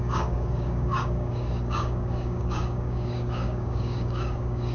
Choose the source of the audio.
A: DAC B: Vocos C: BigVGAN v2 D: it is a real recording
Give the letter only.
A